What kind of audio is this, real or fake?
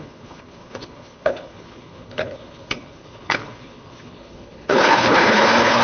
fake